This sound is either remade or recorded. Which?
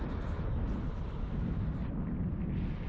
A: recorded